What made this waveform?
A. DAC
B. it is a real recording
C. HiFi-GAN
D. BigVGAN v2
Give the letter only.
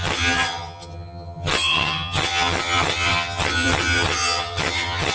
C